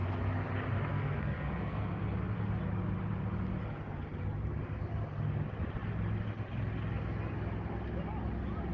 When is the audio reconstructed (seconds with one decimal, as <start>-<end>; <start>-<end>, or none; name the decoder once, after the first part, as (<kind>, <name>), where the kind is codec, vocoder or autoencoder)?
0.9-2.0 (codec, SNAC)